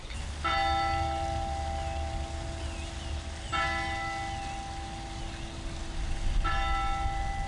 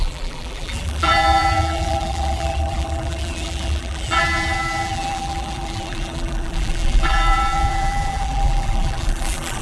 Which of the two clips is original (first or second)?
first